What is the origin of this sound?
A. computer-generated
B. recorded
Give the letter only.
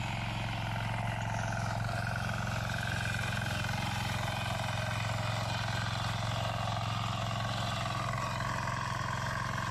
B